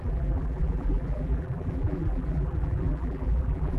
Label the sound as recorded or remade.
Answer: remade